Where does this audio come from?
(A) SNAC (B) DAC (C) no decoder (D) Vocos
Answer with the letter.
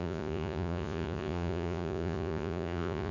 D